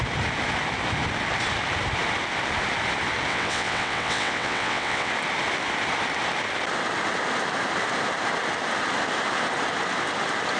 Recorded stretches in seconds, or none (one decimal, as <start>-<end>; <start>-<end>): 0.0-3.3; 5.1-10.6